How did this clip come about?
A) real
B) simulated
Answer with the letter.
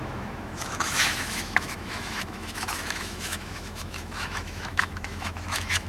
B